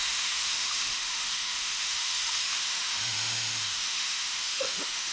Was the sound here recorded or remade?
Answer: remade